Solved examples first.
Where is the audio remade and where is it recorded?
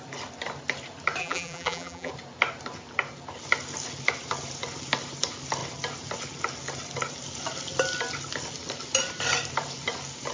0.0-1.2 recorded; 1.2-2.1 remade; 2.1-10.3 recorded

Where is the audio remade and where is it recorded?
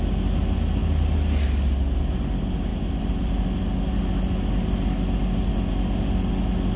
0.0-2.7 recorded; 2.7-3.6 remade; 3.6-6.8 recorded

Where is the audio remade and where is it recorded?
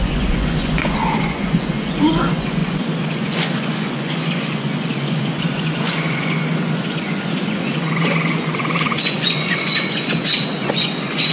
0.0-11.3 remade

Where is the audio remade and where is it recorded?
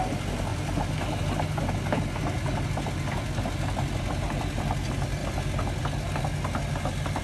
0.0-7.2 recorded